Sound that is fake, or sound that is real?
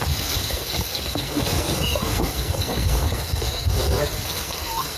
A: fake